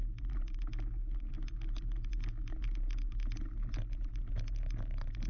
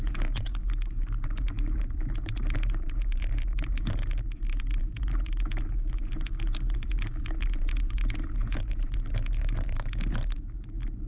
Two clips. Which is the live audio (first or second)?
first